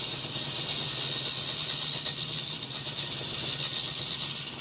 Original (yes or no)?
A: yes